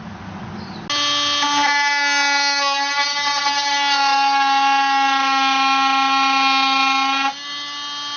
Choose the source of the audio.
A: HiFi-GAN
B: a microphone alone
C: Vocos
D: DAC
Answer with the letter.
B